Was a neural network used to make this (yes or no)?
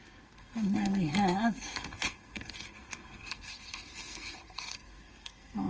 yes